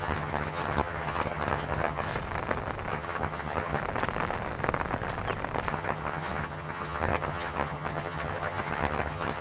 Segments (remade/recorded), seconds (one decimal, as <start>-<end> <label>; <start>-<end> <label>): 0.0-2.1 remade; 2.1-2.9 recorded; 2.9-3.8 remade; 3.8-5.7 recorded; 5.7-9.4 remade

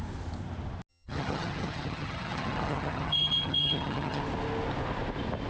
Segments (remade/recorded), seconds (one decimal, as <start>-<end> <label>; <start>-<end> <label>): 0.0-0.9 recorded; 0.9-4.2 remade; 4.2-5.5 recorded